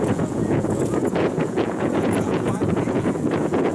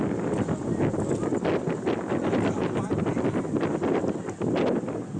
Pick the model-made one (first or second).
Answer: first